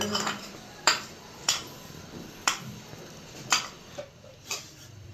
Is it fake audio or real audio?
fake